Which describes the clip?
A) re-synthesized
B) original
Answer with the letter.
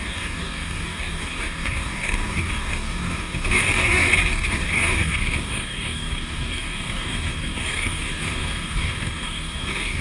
A